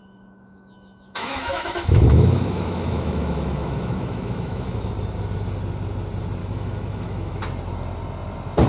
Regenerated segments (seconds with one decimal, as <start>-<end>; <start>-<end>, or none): 0.0-4.9; 6.4-7.4